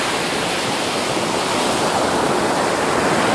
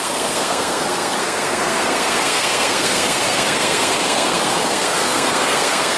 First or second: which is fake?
second